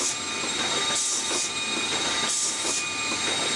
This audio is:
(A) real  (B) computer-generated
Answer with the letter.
A